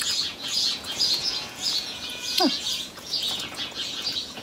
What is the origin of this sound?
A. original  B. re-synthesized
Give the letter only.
B